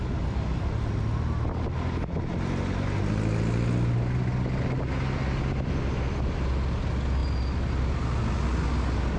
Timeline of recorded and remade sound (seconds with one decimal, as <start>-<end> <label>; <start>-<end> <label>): 0.0-9.2 recorded